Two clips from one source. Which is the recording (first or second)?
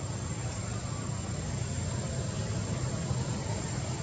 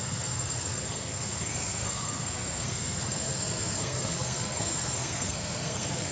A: first